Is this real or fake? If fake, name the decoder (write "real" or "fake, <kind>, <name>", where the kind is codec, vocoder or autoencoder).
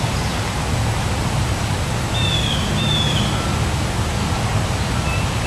real